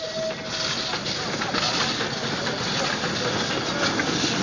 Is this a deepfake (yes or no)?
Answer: no